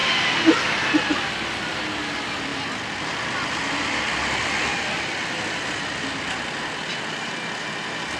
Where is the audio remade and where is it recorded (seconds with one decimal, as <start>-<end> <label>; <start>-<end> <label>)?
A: 0.0-8.2 recorded